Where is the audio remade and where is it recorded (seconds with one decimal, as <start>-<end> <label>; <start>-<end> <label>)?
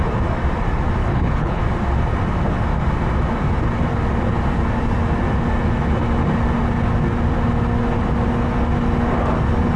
0.0-1.0 recorded; 1.0-1.6 remade; 1.6-9.8 recorded